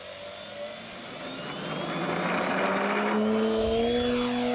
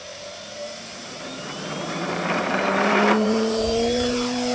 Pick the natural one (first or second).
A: first